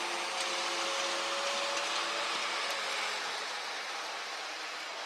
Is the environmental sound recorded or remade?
recorded